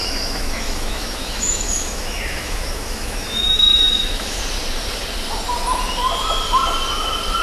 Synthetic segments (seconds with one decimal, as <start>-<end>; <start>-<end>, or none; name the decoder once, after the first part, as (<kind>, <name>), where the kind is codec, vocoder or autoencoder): 0.0-4.4 (autoencoder, DAC-VAE)